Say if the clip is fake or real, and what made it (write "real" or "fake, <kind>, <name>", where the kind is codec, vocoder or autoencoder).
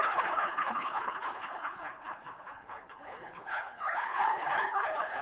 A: fake, codec, HILCodec